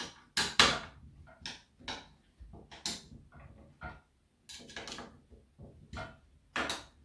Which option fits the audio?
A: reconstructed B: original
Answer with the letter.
B